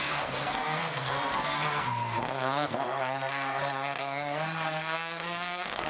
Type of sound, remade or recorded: remade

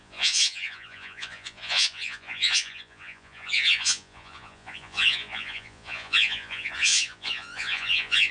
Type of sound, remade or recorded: remade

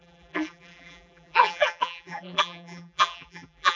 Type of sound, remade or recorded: remade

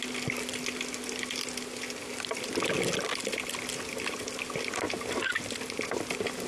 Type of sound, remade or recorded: recorded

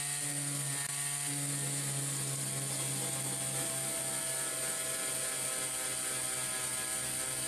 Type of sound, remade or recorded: recorded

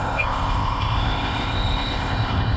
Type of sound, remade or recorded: remade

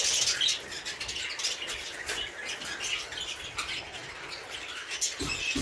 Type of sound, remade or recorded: recorded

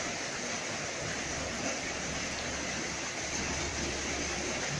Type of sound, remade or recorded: remade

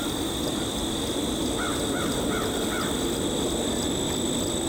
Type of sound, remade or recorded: recorded